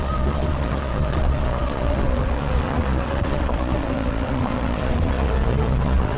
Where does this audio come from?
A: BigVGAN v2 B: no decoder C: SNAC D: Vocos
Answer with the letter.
D